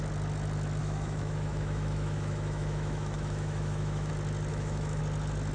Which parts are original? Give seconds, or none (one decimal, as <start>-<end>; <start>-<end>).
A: 0.0-0.8; 4.1-4.5; 5.0-5.5